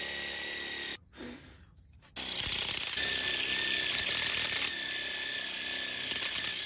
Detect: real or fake real